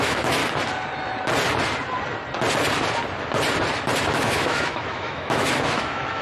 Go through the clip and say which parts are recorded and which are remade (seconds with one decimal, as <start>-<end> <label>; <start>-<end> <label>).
0.0-0.4 remade; 0.4-4.0 recorded; 4.0-6.2 remade